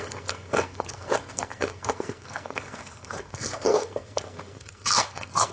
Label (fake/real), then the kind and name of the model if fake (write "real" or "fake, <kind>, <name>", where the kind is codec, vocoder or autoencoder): fake, codec, SNAC